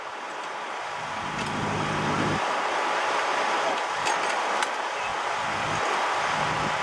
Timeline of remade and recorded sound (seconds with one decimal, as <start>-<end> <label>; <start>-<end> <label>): 0.0-6.8 recorded